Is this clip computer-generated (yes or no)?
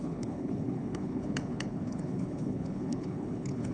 yes